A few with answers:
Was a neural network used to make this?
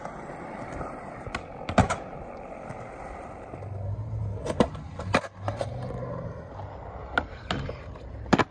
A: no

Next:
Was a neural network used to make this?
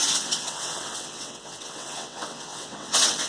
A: yes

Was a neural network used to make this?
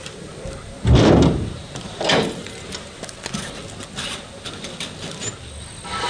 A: no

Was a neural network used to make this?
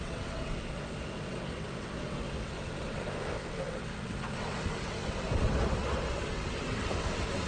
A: yes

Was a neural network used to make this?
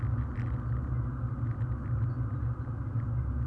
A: no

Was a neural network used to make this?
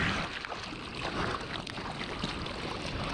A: no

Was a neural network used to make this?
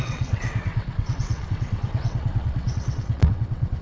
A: yes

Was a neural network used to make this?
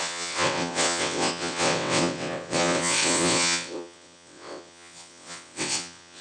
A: yes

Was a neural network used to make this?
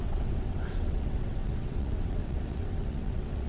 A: yes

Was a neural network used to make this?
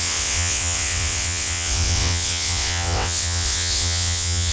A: yes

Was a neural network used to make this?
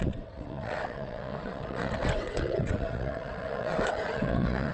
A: yes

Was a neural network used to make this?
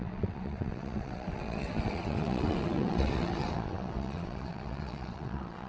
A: yes